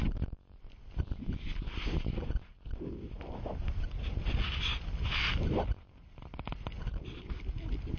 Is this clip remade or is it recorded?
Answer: recorded